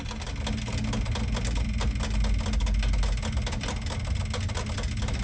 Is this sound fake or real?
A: real